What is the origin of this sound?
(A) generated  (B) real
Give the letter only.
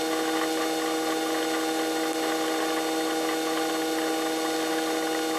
B